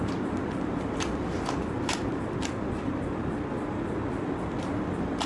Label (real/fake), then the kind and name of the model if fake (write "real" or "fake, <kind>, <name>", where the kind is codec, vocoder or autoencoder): real